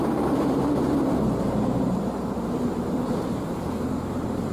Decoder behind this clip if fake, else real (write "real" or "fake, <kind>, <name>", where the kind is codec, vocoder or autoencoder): fake, vocoder, BigVGAN v2